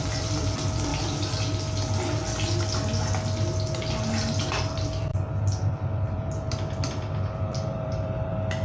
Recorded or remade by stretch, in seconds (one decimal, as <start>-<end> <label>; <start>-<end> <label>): 0.0-0.9 remade; 0.9-4.4 recorded; 4.4-8.6 remade